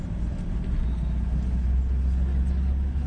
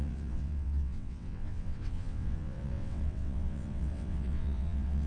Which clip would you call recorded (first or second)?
first